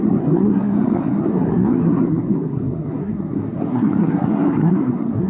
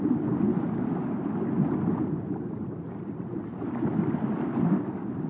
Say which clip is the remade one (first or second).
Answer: first